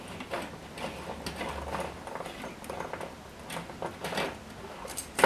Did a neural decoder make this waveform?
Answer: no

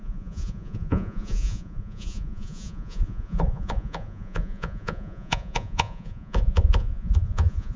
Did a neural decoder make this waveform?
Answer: yes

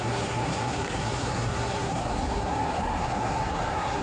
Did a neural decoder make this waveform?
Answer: yes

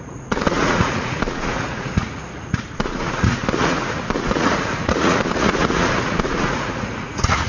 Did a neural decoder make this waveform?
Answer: yes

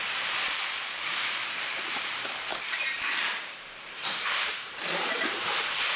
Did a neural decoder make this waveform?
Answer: yes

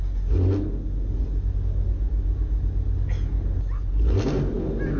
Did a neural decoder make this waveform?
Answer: no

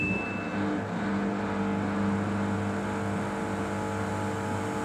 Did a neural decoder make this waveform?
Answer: no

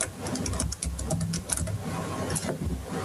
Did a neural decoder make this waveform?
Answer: no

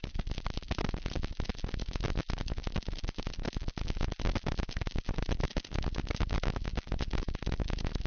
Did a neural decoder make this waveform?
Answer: no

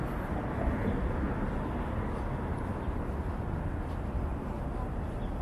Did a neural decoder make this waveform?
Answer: no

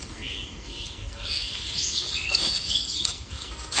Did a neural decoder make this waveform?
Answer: yes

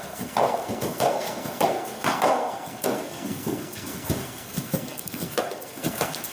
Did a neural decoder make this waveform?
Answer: yes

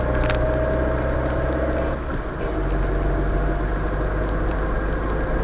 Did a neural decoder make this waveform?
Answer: no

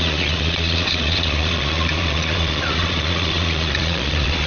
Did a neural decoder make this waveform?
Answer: yes